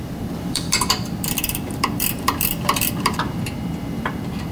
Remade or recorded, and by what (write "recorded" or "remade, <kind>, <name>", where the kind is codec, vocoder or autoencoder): remade, vocoder, BigVGAN v2